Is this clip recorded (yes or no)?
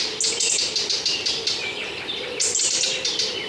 yes